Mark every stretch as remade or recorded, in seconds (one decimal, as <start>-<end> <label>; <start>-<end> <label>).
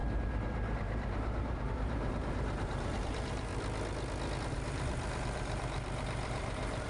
0.0-3.5 remade; 3.5-4.4 recorded; 4.4-6.9 remade